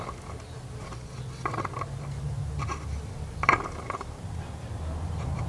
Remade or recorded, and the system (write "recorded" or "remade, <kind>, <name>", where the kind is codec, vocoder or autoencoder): recorded